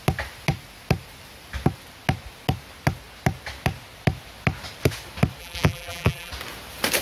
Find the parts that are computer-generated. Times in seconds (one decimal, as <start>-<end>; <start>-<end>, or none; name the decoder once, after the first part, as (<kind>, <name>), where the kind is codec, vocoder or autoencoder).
5.4-6.3 (vocoder, BigVGAN v2)

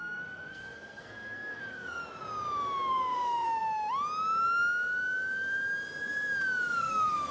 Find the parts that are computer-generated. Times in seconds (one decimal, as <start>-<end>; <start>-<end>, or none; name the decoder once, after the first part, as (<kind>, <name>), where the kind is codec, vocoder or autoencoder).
0.0-2.0 (codec, SNAC); 2.9-3.6; 6.8-7.3

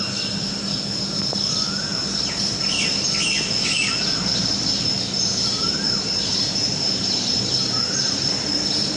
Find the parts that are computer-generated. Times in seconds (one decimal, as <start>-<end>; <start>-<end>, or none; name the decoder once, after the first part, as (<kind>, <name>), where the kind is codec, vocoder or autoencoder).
5.3-9.0 (vocoder, BigVGAN v2)

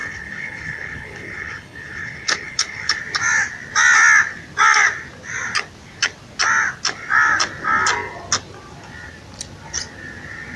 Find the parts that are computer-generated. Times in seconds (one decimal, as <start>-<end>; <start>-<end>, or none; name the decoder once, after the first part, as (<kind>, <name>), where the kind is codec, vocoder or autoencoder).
0.0-3.0 (codec, HILCodec)